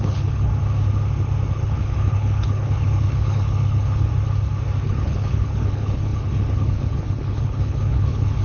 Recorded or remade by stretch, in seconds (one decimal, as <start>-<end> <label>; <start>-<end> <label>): 0.0-0.5 remade; 0.5-1.5 recorded; 1.5-4.1 remade; 4.1-4.8 recorded; 4.8-8.4 remade